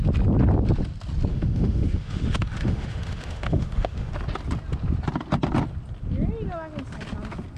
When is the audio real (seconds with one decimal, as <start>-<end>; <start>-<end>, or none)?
0.0-1.3; 4.1-7.6